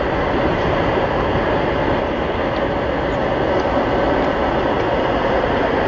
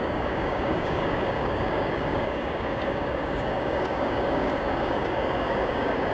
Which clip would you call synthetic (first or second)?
second